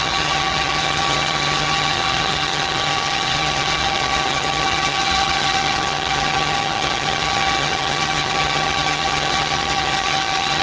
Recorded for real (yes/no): no